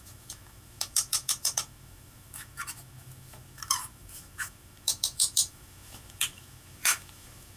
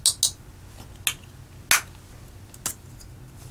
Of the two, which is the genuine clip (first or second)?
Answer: second